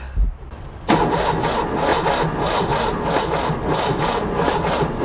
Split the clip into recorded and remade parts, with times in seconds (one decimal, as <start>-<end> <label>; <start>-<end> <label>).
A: 0.0-1.9 recorded; 1.9-5.0 remade